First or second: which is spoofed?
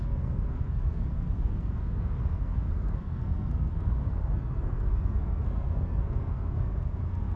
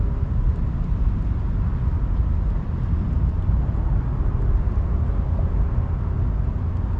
first